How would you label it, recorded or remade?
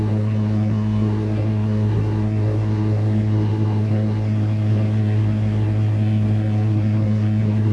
remade